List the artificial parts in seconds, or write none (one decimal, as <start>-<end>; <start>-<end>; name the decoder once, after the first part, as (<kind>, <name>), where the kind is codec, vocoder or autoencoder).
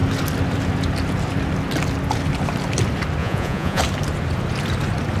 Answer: 3.2-3.8 (vocoder, Vocos)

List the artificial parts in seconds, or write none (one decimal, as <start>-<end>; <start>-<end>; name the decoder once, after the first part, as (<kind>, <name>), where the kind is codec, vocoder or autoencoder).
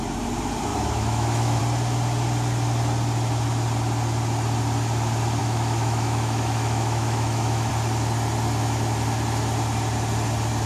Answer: 0.7-1.6 (autoencoder, DAC-VAE); 5.4-7.7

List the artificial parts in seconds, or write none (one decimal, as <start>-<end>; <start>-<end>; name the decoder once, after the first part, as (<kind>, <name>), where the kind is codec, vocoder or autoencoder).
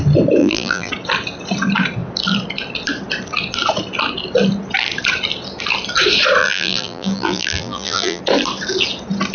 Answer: 0.4-0.9 (vocoder, BigVGAN v2); 6.4-8.2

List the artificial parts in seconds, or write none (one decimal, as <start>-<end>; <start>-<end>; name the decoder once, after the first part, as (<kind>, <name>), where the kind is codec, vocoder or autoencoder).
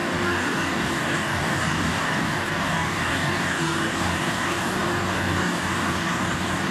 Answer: 0.0-6.7 (codec, DAC)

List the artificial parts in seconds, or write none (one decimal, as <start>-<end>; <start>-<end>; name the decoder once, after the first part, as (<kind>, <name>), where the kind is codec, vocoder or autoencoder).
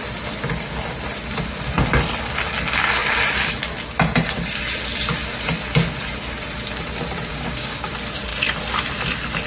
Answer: 7.3-7.8 (codec, DAC)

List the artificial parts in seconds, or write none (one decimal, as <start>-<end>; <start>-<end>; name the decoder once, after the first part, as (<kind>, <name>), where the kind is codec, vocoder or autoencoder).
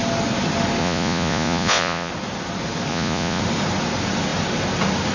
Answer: 0.8-2.1 (vocoder, Vocos); 2.9-3.4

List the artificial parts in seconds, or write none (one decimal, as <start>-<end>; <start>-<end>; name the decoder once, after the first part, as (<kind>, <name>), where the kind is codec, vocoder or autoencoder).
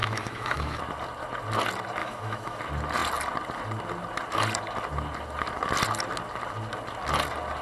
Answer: 0.0-0.8 (autoencoder, DAC-VAE); 2.0-2.6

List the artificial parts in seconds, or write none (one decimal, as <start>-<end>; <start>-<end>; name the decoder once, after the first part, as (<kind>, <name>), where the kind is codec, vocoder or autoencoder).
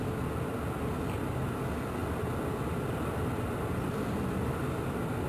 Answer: none